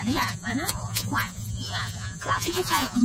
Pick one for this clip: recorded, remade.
remade